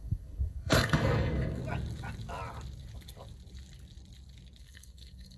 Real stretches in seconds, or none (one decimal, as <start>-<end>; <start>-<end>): 1.6-4.6